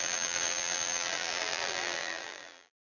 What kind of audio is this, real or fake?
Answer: fake